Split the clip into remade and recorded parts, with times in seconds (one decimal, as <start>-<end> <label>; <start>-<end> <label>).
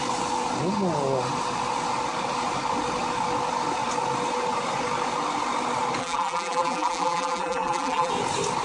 0.0-6.0 recorded; 6.0-8.1 remade; 8.1-8.6 recorded